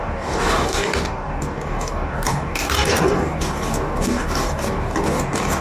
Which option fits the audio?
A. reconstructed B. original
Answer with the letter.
A